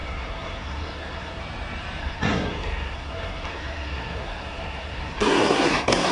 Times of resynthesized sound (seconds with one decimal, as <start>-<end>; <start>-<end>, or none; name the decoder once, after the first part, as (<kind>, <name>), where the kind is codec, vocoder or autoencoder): 0.0-1.4 (codec, SNAC); 2.0-6.1